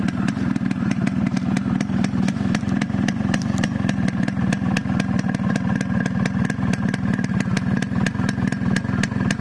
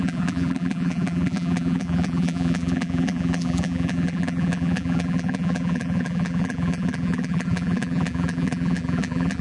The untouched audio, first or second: first